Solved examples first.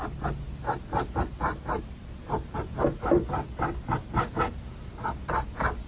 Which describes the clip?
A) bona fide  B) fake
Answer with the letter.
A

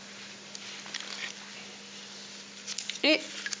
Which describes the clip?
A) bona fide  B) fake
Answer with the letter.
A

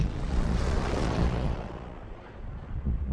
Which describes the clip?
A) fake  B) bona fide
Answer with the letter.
A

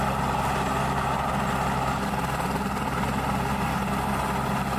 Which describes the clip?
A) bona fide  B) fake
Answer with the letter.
A